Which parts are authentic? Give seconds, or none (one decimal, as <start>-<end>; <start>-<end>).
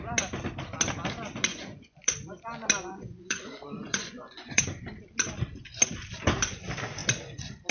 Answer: 0.0-1.5; 2.1-2.9; 4.8-7.7